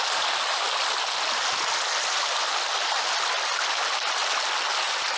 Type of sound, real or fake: real